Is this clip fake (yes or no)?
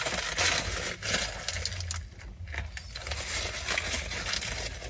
no